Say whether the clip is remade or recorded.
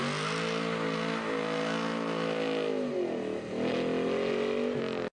recorded